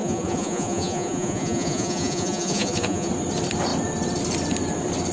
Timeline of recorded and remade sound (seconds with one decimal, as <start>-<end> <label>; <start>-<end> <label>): 0.0-3.1 remade; 3.1-5.1 recorded